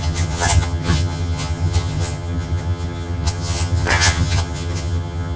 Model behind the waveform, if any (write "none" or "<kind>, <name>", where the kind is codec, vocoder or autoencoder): vocoder, HiFi-GAN